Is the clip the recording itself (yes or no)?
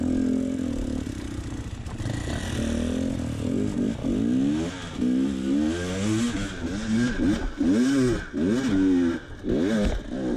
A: yes